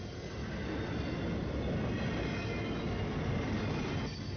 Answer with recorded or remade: recorded